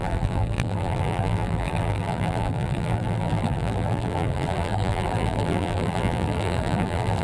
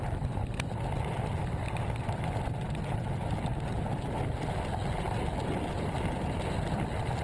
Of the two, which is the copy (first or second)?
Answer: first